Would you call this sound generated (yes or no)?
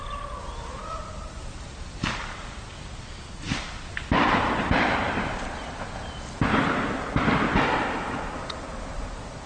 no